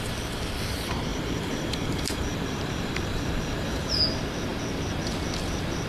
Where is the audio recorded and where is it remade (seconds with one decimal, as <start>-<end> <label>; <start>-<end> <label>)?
0.0-1.1 recorded; 1.1-4.0 remade; 4.0-5.9 recorded